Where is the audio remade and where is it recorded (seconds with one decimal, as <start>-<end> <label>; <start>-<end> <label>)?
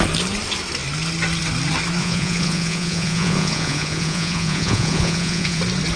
0.0-2.0 recorded; 2.0-5.6 remade; 5.6-6.0 recorded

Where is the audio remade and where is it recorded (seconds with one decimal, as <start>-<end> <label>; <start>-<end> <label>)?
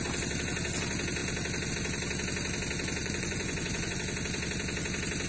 0.0-3.0 recorded; 3.0-4.0 remade; 4.0-5.3 recorded